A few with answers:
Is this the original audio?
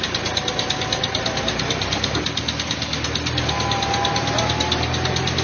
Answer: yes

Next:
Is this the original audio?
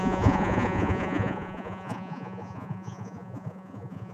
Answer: no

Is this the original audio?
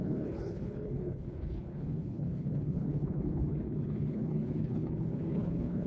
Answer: no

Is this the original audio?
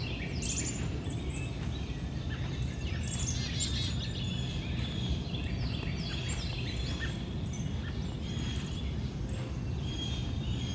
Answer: yes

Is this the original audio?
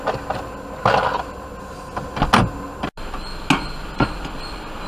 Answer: yes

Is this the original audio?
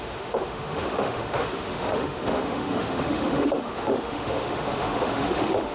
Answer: no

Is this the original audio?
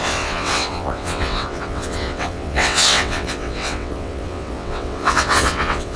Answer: no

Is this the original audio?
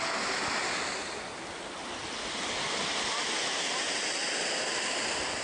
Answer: yes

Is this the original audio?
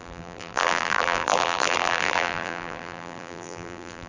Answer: no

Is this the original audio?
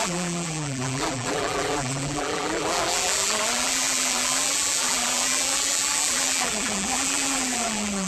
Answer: no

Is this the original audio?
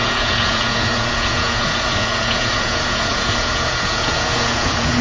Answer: no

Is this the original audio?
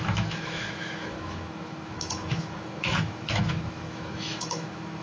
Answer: no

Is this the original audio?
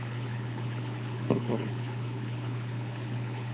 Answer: no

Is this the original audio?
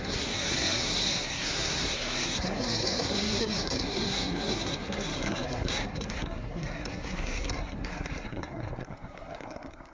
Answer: no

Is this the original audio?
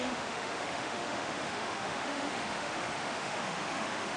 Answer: no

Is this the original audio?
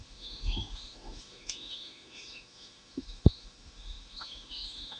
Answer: no